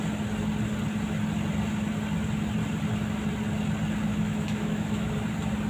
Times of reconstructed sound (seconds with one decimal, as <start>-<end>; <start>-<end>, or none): 4.1-5.1